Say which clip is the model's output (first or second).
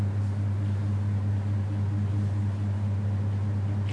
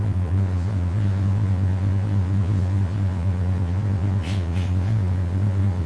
second